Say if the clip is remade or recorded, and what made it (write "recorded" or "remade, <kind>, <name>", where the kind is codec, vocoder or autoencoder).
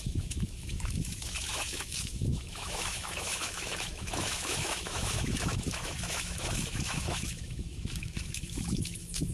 remade, autoencoder, DAC-VAE